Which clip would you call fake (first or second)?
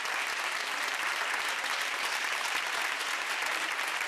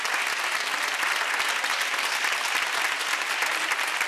first